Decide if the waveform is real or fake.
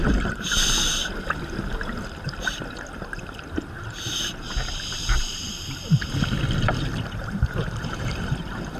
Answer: fake